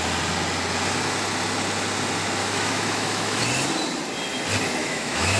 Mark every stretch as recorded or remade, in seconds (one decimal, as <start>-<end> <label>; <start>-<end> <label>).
0.0-2.4 recorded; 2.4-3.4 remade; 3.4-4.8 recorded; 4.8-5.4 remade